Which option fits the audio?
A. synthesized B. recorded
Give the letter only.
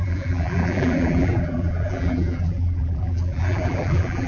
A